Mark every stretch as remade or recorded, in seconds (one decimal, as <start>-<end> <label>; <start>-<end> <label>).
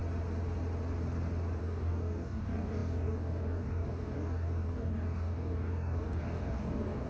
0.0-1.6 recorded; 1.6-7.1 remade